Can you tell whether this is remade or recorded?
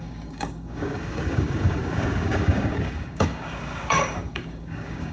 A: remade